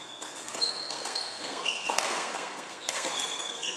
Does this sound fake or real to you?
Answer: fake